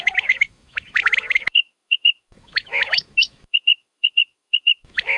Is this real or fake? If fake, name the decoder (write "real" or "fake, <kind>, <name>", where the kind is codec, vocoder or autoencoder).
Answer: fake, autoencoder, DAC-VAE